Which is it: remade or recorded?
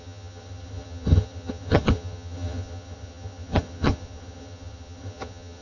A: remade